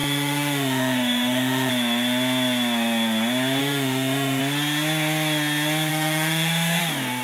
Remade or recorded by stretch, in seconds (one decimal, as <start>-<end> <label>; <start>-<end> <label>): 0.0-1.7 remade; 1.7-3.6 recorded; 3.6-4.4 remade; 4.4-5.9 recorded; 5.9-6.8 remade; 6.8-7.2 recorded